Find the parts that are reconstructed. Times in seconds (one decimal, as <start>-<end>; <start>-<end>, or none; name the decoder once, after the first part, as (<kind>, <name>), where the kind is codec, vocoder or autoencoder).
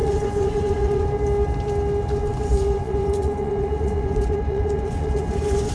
0.0-1.1 (vocoder, Vocos); 2.3-5.7